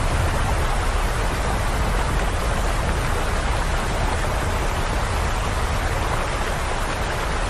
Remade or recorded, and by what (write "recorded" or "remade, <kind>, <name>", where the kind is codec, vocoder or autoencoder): recorded